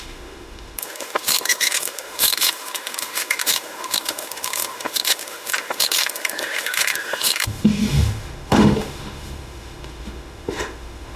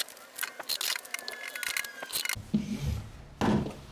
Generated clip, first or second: first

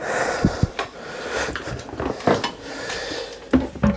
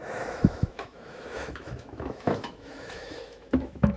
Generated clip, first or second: second